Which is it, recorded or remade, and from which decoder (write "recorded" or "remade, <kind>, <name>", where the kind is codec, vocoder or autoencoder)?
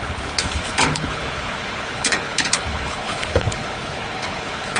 remade, codec, HILCodec